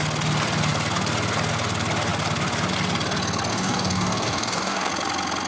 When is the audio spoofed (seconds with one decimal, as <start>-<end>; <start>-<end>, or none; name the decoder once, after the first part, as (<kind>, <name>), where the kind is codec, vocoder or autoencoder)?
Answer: 3.5-4.9 (codec, DAC)